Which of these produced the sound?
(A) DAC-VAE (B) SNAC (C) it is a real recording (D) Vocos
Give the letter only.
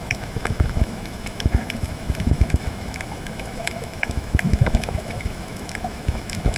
A